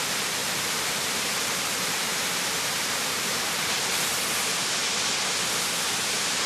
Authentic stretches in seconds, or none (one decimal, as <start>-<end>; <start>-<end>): 0.0-0.4; 4.3-6.5